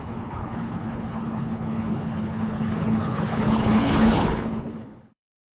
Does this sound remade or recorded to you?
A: remade